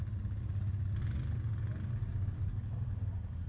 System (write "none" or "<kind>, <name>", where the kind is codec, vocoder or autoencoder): none